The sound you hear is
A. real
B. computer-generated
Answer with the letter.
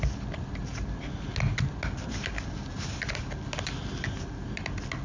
A